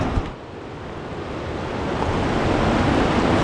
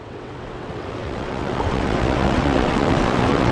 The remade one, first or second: second